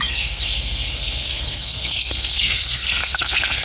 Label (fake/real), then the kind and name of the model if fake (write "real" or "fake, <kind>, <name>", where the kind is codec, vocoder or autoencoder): fake, codec, SNAC